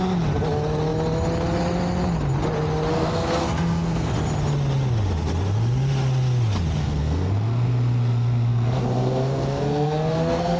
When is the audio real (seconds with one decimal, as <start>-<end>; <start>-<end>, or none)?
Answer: 0.0-2.9; 4.1-6.8